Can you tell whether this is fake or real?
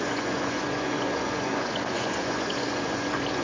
fake